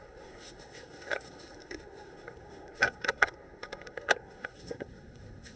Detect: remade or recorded remade